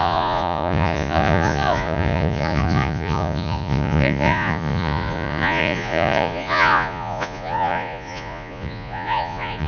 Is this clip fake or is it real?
fake